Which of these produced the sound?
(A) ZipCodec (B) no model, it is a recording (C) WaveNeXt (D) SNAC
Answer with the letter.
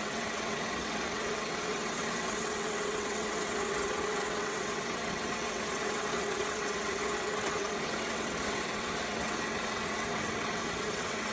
C